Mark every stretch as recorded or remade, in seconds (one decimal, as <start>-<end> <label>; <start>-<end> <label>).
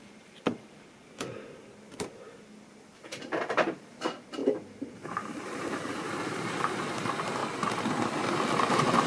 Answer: 0.0-0.5 remade; 0.5-3.2 recorded; 3.2-7.4 remade; 7.4-8.7 recorded; 8.7-9.1 remade